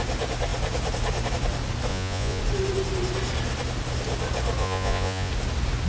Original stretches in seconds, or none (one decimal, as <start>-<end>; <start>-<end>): 0.0-1.9; 2.4-4.6; 5.3-5.9